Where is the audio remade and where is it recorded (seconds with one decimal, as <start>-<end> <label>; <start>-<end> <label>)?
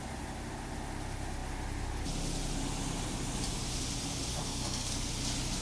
0.0-4.3 recorded; 4.3-5.1 remade; 5.1-5.6 recorded